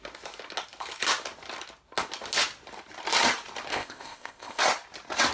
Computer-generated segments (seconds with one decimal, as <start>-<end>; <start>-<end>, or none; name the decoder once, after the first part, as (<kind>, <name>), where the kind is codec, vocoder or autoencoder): 3.7-4.6 (codec, ZipCodec)